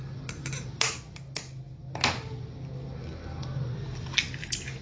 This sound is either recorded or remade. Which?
recorded